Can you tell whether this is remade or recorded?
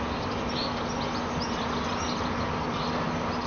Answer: recorded